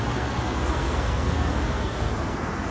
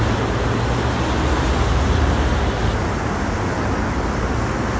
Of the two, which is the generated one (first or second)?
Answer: first